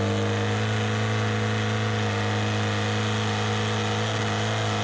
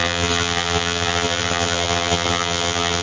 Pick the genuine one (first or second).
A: first